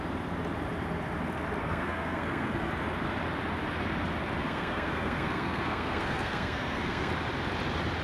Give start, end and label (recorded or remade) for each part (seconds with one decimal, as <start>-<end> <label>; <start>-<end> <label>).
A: 0.0-1.6 recorded; 1.6-2.7 remade; 2.7-4.4 recorded; 4.4-7.1 remade; 7.1-8.0 recorded